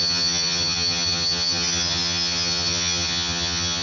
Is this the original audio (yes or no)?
no